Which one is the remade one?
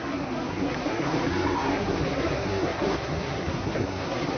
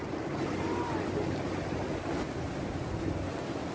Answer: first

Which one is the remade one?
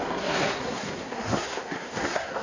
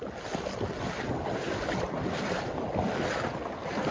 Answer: first